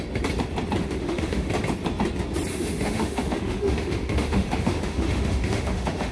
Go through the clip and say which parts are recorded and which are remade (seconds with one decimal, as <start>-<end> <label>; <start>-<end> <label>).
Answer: 0.0-0.8 recorded; 0.8-1.5 remade; 1.5-2.5 recorded; 2.5-6.1 remade